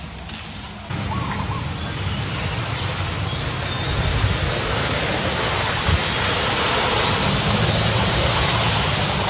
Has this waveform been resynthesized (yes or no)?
no